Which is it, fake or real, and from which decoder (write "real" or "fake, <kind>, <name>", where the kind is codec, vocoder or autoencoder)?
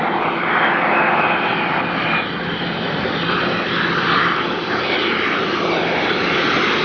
real